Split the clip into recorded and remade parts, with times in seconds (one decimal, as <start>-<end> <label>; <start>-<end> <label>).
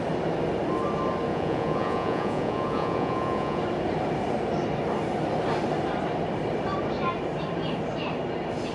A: 0.0-1.3 recorded; 1.3-3.6 remade; 3.6-8.7 recorded